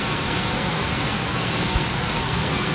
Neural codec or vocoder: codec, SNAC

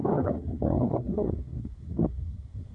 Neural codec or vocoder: codec, SNAC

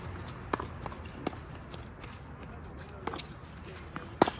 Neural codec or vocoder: none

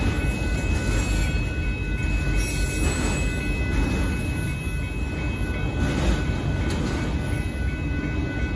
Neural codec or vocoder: none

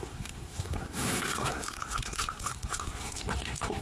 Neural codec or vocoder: codec, SNAC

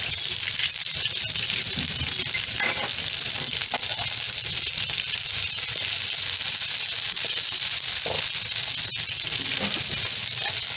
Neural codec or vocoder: none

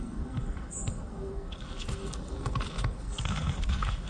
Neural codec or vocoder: codec, SNAC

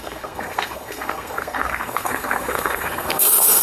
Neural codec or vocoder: codec, SNAC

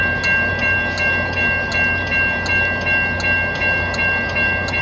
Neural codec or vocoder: none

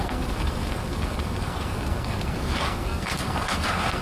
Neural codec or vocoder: codec, SNAC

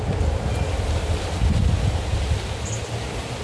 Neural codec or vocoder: none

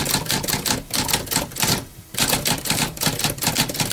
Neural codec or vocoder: none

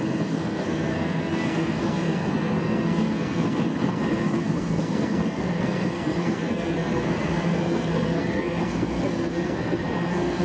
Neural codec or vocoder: codec, SNAC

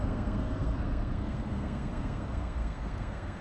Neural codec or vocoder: codec, SNAC